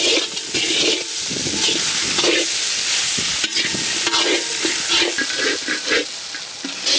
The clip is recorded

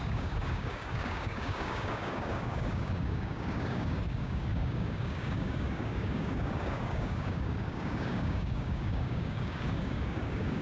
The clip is remade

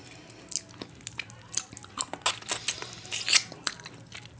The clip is recorded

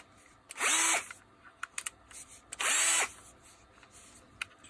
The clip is recorded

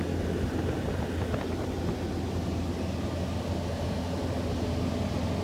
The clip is recorded